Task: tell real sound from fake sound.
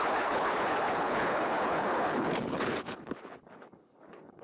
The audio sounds fake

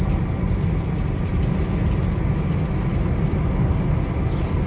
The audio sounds real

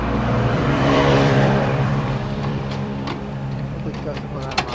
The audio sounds fake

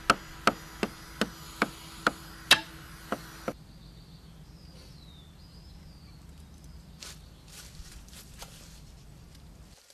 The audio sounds real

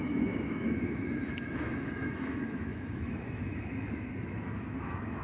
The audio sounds fake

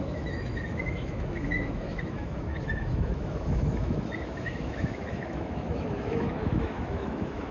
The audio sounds fake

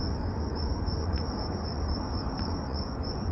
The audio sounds fake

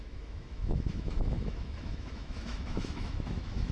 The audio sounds fake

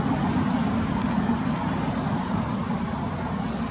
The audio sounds real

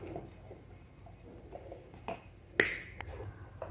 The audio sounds real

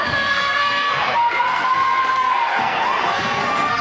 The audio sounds fake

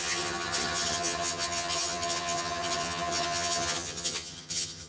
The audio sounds fake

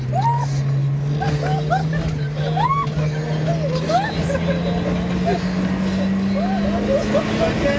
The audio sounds real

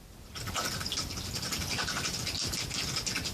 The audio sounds real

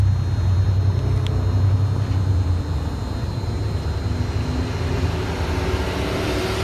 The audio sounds real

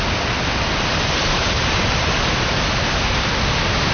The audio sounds real